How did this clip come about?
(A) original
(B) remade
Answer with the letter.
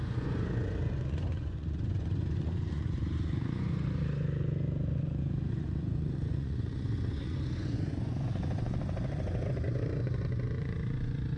B